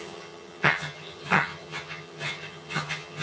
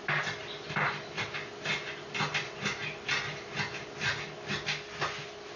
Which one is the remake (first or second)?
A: first